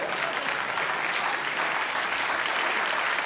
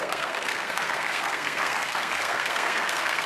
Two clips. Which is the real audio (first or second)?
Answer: first